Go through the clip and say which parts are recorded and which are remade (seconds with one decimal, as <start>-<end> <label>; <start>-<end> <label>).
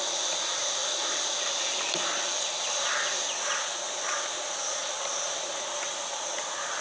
0.0-6.8 recorded